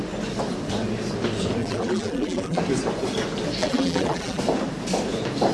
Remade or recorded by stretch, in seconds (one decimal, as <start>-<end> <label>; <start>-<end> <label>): 0.0-1.6 recorded; 1.6-2.6 remade; 2.6-3.6 recorded; 3.6-4.4 remade; 4.4-5.5 recorded

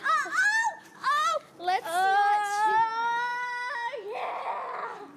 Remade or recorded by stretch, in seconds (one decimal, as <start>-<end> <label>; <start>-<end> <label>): 0.0-0.6 recorded; 0.6-1.5 remade; 1.5-3.3 recorded; 3.3-4.5 remade; 4.5-5.2 recorded

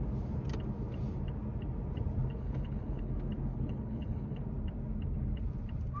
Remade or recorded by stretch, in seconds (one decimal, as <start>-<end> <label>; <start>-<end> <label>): 0.0-2.3 recorded; 2.3-3.1 remade; 3.1-3.5 recorded; 3.5-4.4 remade; 4.4-6.0 recorded

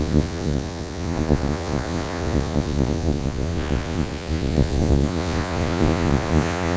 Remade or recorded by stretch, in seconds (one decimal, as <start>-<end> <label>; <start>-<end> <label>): 0.0-6.8 remade